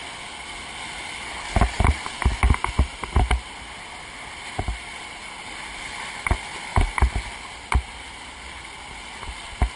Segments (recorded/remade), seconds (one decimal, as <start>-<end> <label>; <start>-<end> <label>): 0.0-9.8 recorded